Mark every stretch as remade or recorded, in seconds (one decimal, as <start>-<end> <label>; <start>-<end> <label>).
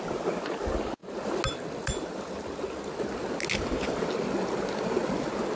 0.0-5.6 recorded